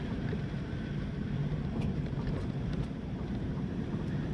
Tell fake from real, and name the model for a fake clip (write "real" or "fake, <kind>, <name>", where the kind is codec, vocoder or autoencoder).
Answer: fake, vocoder, BigVGAN v2